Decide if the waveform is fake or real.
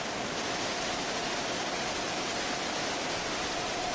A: real